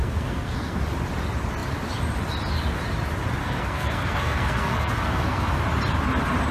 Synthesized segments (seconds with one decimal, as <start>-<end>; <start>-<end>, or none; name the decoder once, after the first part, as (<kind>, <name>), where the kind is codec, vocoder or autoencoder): 0.0-0.8 (codec, SNAC); 3.4-5.6